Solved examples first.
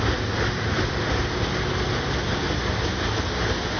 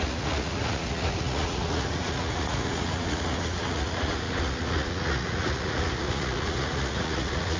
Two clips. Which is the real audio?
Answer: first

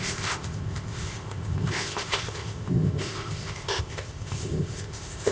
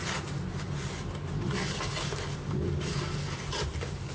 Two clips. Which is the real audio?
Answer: second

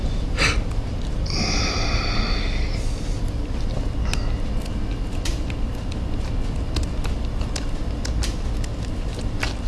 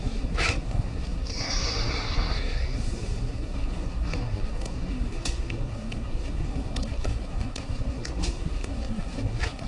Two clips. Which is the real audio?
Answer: first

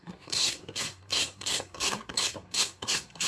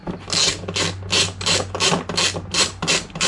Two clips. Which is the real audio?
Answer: second